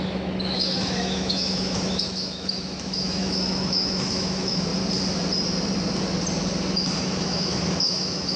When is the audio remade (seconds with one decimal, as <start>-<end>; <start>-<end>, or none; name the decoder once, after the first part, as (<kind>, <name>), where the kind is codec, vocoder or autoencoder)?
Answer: 0.0-4.7 (autoencoder, DAC-VAE); 7.0-8.4